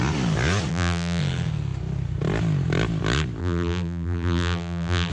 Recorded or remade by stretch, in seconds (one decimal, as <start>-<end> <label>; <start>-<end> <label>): 0.0-0.7 recorded; 0.7-1.2 remade; 1.2-3.4 recorded; 3.4-5.1 remade